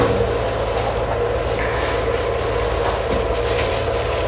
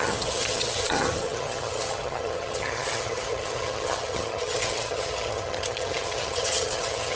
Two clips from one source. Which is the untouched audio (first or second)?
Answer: first